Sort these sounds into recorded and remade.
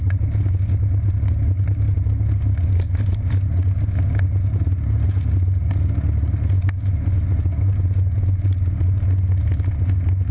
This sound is recorded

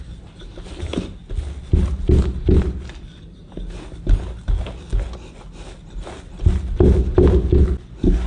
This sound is recorded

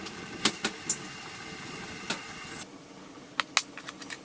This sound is recorded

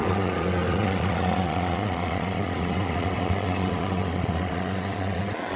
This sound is remade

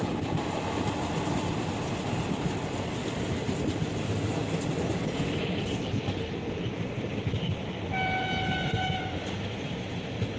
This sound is recorded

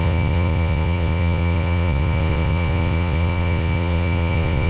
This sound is remade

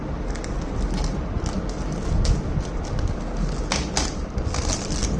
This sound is recorded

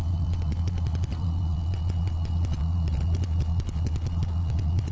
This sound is remade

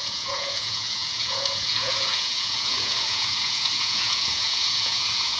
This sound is remade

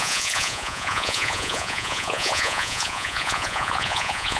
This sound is remade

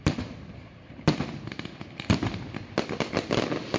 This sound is recorded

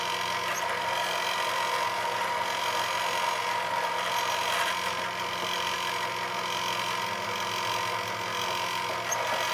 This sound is recorded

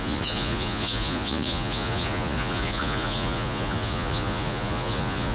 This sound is remade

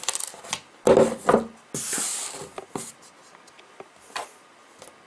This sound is recorded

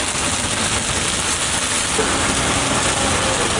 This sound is recorded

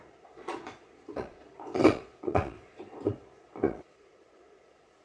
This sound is remade